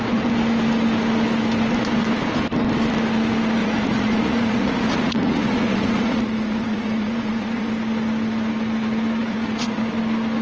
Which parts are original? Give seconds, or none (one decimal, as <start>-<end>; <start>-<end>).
0.0-3.6; 7.7-9.2; 9.8-10.4